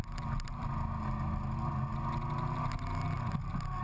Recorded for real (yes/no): yes